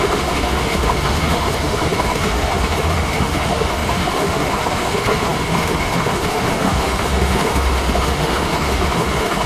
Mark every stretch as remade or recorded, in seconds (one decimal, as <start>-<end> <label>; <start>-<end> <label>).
0.0-9.5 remade